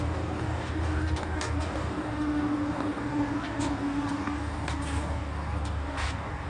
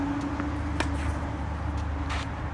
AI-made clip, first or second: first